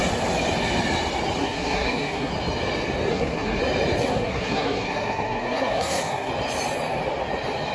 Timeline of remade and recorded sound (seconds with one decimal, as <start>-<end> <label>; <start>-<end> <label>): 0.0-1.4 recorded; 1.4-2.3 remade; 2.3-3.1 recorded; 3.1-3.6 remade; 3.6-4.0 recorded; 4.0-6.3 remade; 6.3-7.7 recorded